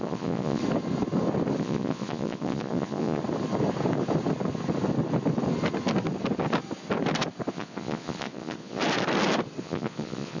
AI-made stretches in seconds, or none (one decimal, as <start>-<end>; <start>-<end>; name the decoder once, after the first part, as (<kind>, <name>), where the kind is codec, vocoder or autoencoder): 0.0-0.6 (vocoder, Vocos); 1.6-3.2; 7.5-8.8; 9.6-10.4